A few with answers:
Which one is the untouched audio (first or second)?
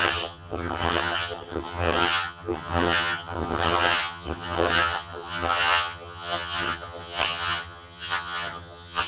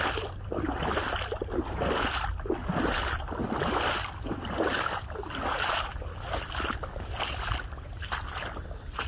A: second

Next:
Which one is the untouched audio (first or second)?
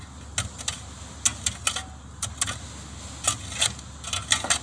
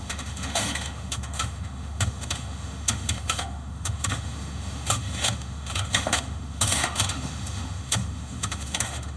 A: first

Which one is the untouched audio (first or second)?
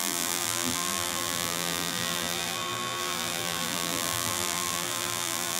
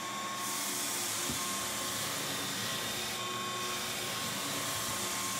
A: second